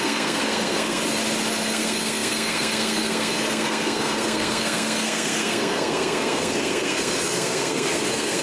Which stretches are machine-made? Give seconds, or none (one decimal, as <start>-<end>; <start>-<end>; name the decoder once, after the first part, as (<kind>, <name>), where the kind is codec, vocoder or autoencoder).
0.0-1.0 (codec, SNAC); 1.7-8.4